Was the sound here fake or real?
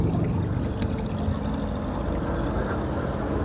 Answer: real